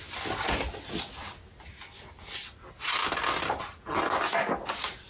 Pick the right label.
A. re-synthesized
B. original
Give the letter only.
B